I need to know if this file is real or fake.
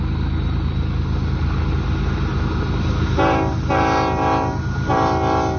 real